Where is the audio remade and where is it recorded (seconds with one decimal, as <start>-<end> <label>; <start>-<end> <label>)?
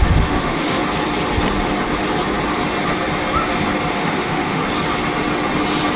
0.0-0.8 remade; 0.8-3.9 recorded; 3.9-4.6 remade; 4.6-6.0 recorded